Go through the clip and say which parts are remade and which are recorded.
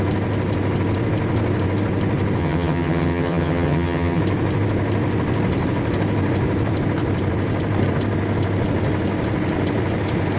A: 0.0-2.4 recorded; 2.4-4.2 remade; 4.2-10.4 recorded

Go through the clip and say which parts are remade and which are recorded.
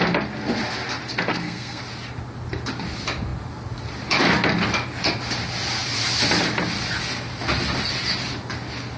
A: 0.0-1.3 recorded; 1.3-1.8 remade; 1.8-9.0 recorded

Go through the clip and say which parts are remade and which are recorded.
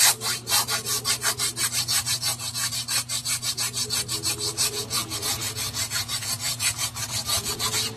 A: 0.0-5.0 recorded; 5.0-5.9 remade; 5.9-6.5 recorded; 6.5-8.0 remade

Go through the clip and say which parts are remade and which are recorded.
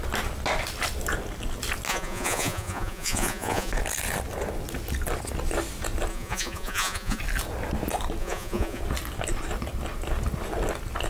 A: 0.0-1.9 recorded; 1.9-3.7 remade; 3.7-6.1 recorded; 6.1-7.2 remade; 7.2-8.2 recorded; 8.2-8.8 remade; 8.8-11.1 recorded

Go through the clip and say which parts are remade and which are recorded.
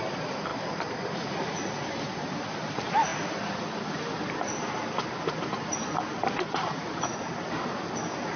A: 0.0-8.4 recorded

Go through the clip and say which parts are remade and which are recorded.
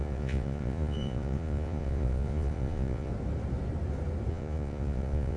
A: 0.0-3.1 remade; 3.1-4.3 recorded; 4.3-5.4 remade